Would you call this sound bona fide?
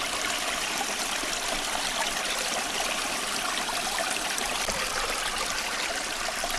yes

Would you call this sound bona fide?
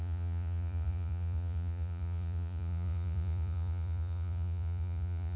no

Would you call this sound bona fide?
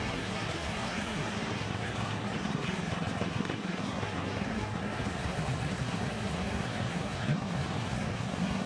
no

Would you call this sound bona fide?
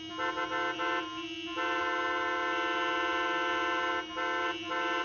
yes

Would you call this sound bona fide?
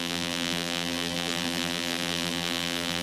no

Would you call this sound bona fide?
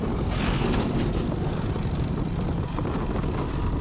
yes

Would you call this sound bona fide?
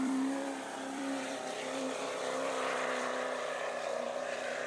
no